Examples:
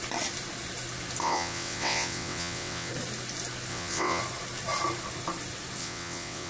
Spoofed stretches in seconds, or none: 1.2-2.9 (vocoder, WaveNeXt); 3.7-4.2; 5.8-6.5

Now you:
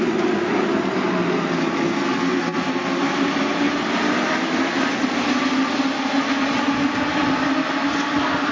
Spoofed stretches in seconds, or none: none

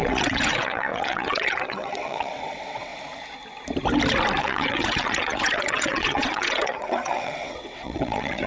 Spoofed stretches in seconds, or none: 0.0-2.9 (vocoder, WaveNeXt); 4.4-8.5

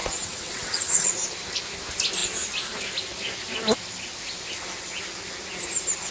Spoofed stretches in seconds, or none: 0.0-1.1 (vocoder, WaveNeXt)

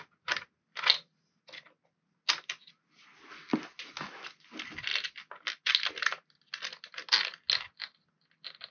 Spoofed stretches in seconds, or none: none

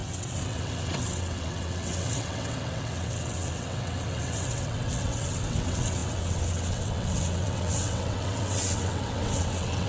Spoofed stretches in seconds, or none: 0.0-9.9 (vocoder, WaveNeXt)